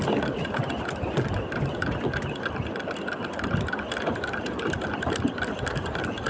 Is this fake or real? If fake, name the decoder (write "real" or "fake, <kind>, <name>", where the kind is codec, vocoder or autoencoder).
real